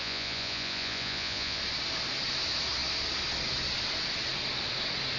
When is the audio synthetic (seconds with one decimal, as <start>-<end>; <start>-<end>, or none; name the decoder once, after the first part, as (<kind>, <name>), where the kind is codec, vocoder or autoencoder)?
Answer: 0.0-1.6 (vocoder, Vocos)